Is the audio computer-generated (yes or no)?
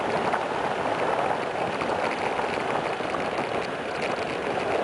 no